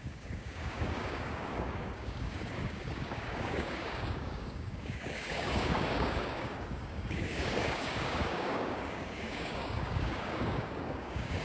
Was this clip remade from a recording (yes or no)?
yes